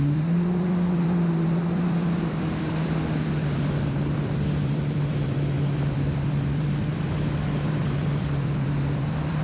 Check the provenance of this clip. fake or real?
fake